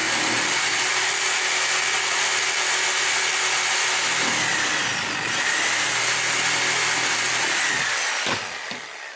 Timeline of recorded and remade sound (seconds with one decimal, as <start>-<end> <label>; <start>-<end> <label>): 0.0-9.2 recorded